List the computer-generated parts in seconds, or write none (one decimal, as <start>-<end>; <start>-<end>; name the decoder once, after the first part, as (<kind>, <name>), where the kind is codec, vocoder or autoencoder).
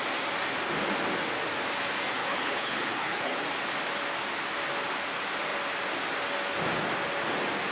2.2-3.5 (codec, HILCodec)